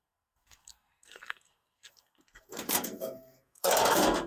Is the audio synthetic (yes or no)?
yes